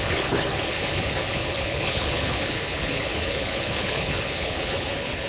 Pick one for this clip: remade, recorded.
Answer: remade